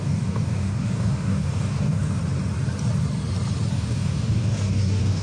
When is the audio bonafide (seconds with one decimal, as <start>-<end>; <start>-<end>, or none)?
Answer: 2.2-3.7